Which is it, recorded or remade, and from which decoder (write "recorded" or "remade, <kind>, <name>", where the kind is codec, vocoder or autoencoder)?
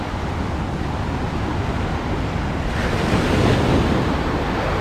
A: recorded